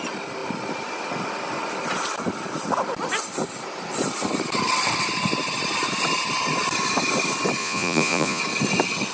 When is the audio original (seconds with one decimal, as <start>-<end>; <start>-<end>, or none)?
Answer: 0.0-7.6; 8.4-9.1